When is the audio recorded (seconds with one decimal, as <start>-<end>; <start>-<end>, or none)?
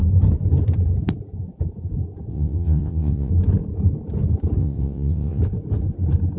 0.0-2.3; 3.3-4.6; 5.4-6.4